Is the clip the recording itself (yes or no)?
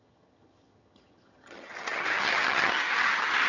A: no